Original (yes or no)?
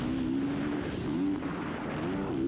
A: yes